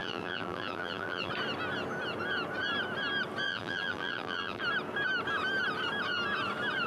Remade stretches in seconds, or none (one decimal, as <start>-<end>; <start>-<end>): 0.0-1.3; 3.5-4.6